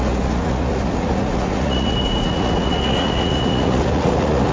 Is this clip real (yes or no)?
no